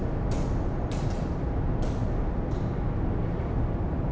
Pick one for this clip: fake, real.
real